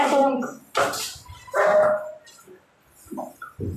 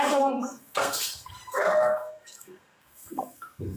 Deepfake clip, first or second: second